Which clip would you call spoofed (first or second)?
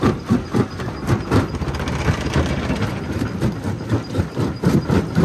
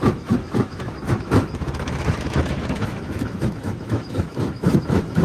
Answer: second